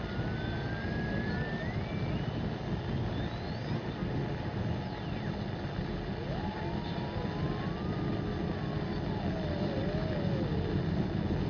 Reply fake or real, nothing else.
real